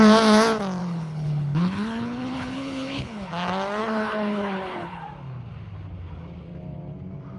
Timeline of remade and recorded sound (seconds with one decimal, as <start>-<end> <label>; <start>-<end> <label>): 0.0-0.8 recorded; 0.8-3.3 remade; 3.3-3.8 recorded; 3.8-5.0 remade; 5.0-7.4 recorded